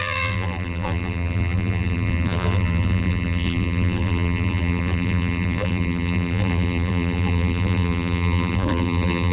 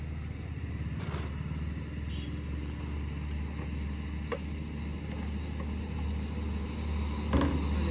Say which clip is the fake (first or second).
first